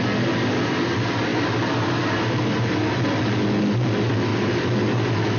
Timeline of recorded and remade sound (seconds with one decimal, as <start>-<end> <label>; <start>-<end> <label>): 0.0-5.4 recorded